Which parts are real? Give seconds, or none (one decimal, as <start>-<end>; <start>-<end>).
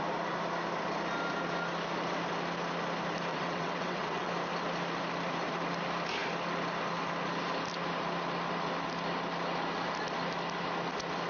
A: 0.0-3.3; 4.3-11.3